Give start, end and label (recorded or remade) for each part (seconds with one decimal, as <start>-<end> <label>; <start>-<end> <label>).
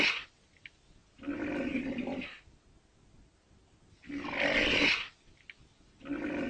0.0-6.5 recorded